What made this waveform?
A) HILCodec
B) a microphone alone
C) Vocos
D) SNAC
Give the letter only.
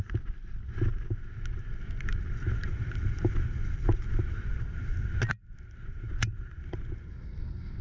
B